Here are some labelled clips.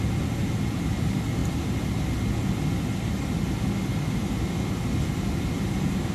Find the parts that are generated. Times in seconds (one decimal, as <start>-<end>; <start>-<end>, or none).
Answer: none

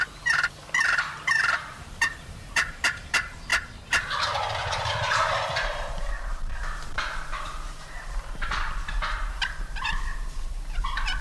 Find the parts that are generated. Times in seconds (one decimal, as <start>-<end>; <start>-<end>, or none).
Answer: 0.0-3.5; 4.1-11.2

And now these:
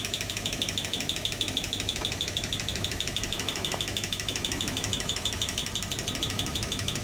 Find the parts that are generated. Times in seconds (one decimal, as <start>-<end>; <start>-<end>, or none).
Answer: 0.0-5.6; 6.2-7.0

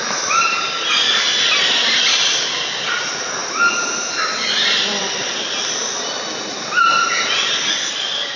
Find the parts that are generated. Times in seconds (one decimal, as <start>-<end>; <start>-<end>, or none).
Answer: none

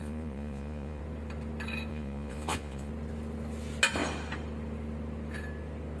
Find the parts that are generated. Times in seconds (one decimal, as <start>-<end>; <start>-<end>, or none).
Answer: 0.0-1.0; 1.9-2.9

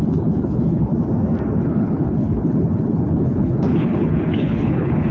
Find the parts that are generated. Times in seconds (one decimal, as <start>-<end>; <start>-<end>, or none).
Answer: 0.0-0.9; 1.6-5.1